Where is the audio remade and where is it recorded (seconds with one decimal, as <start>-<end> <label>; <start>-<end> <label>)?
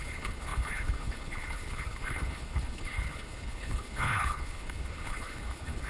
0.0-5.9 remade